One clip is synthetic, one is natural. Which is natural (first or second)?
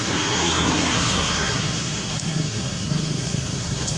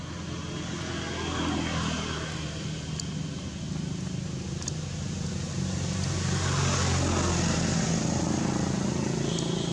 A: second